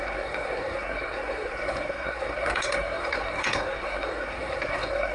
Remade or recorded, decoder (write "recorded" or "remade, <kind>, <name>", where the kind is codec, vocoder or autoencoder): remade, codec, SNAC